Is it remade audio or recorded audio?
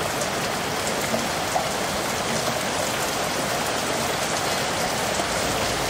recorded